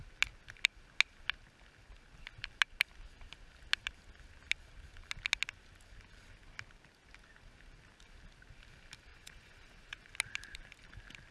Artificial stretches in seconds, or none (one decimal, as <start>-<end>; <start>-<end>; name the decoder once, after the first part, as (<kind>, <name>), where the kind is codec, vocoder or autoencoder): 9.1-10.1 (vocoder, Vocos)